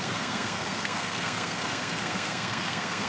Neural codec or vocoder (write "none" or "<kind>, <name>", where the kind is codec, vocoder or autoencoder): codec, SNAC